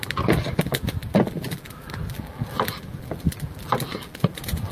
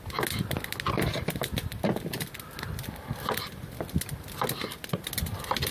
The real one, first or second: second